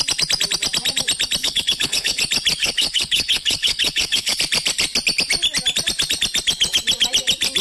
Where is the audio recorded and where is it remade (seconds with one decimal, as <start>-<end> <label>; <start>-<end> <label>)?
0.0-1.4 recorded; 1.4-2.2 remade; 2.2-2.6 recorded; 2.6-4.4 remade; 4.4-7.6 recorded